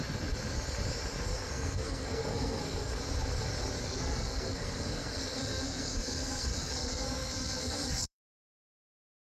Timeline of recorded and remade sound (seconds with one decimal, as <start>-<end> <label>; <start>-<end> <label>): 0.0-1.3 recorded; 1.3-3.0 remade; 3.0-3.8 recorded; 3.8-8.2 remade; 8.2-9.3 recorded